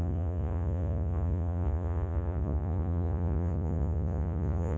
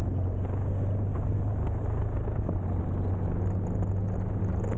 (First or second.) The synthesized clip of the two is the first